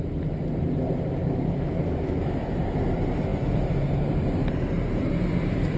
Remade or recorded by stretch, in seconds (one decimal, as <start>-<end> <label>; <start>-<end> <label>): 0.0-1.2 recorded; 1.2-2.6 remade; 2.6-5.8 recorded